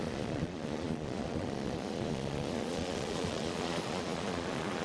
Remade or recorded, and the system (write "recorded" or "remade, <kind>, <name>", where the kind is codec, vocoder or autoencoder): remade, vocoder, Vocos